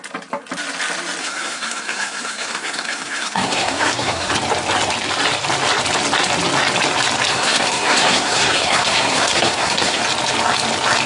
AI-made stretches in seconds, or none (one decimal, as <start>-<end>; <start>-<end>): 1.2-4.3; 7.3-10.0